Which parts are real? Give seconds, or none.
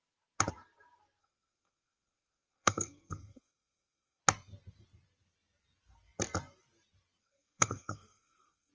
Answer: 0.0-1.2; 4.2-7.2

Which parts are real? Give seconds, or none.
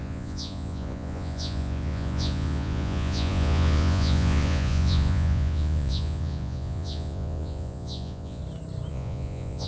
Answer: 8.4-8.9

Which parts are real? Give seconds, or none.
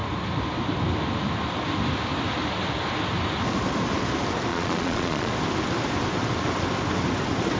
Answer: 0.0-4.5; 5.3-7.6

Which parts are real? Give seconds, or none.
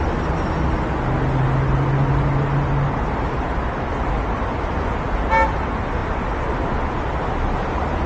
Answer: 0.0-8.1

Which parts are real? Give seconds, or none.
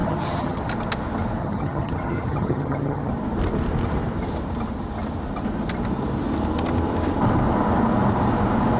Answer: 0.6-1.4; 3.1-8.8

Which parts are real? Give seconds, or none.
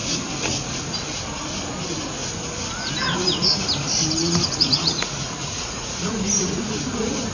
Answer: 0.0-4.2; 6.6-7.3